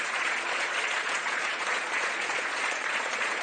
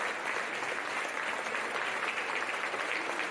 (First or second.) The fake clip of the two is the first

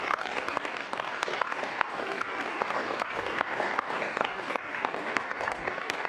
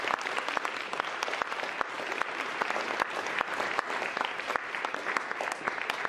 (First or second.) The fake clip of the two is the first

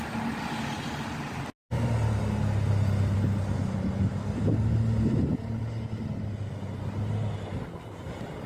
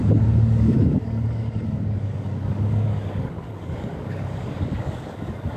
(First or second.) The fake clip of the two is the second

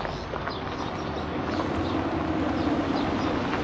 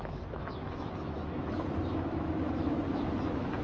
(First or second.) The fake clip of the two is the second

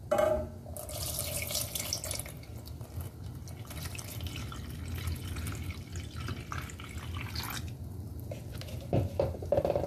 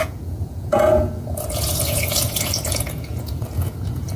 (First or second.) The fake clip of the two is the second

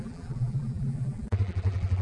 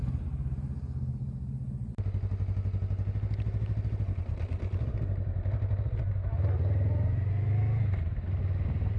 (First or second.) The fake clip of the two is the first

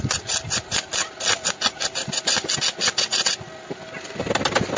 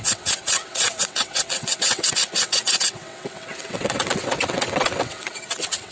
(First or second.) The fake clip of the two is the second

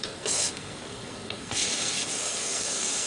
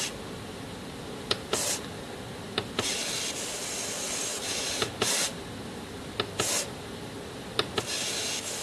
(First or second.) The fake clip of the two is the first